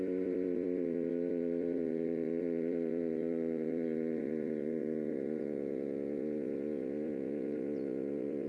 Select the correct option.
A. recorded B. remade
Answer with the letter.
B